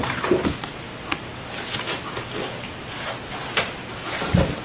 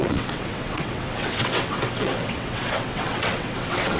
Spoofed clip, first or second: second